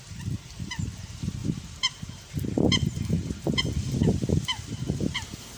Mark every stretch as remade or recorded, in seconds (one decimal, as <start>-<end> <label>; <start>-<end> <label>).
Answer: 0.0-1.4 recorded; 1.4-3.6 remade; 3.6-4.7 recorded; 4.7-5.6 remade

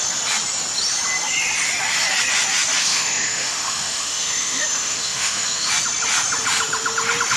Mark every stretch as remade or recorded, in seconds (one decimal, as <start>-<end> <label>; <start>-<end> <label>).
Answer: 0.0-2.8 recorded; 2.8-5.7 remade; 5.7-7.4 recorded

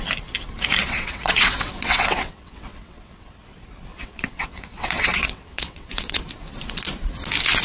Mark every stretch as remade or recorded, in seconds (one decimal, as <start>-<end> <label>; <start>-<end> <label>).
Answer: 0.0-0.8 recorded; 0.8-3.4 remade; 3.4-3.9 recorded; 3.9-6.2 remade; 6.2-7.6 recorded

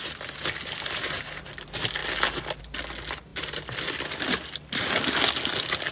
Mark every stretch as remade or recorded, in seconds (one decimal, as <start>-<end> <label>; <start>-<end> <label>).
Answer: 0.0-5.9 recorded